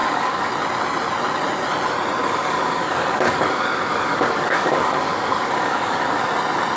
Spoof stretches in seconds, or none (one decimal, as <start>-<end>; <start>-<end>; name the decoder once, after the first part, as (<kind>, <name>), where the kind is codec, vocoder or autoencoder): 0.0-0.5 (codec, DAC); 2.2-6.3